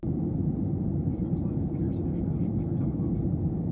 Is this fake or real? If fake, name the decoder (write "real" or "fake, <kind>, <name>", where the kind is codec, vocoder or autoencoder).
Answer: real